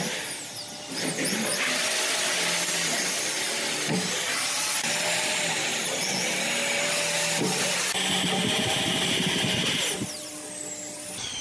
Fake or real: real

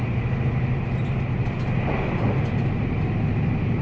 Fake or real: real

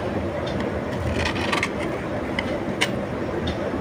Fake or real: real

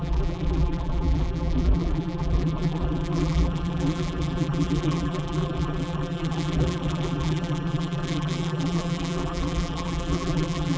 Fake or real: fake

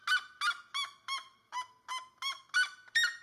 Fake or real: real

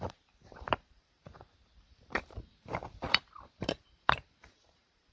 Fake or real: fake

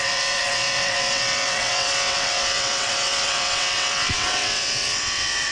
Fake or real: fake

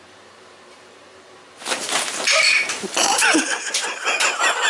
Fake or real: fake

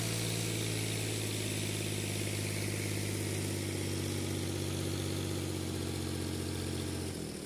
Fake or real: real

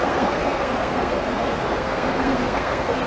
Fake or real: fake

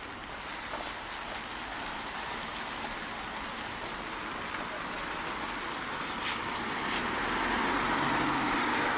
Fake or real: real